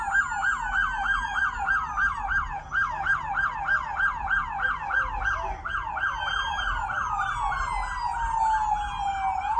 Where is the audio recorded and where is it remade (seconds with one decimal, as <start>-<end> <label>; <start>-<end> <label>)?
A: 0.0-9.6 recorded